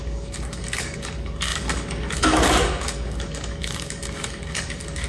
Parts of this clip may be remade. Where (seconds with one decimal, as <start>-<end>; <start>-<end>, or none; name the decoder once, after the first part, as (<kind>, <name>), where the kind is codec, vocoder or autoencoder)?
0.0-5.1 (codec, DAC)